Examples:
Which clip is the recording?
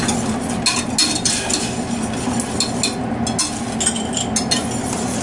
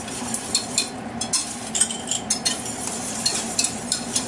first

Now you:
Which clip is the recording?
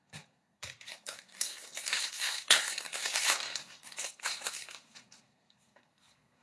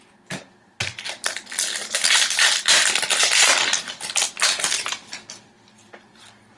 second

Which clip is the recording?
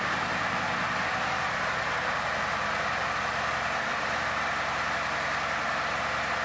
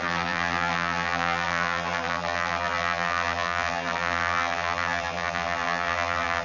first